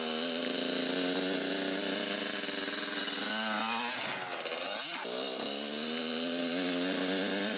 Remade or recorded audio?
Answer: recorded